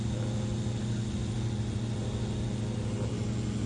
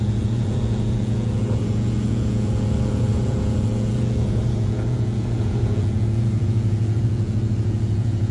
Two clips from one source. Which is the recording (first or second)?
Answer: first